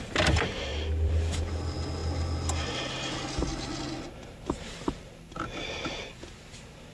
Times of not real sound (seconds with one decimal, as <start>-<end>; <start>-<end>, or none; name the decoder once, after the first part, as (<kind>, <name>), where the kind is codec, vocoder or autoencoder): 0.7-1.2 (vocoder, BigVGAN v2)